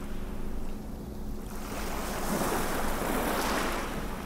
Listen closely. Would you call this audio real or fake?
real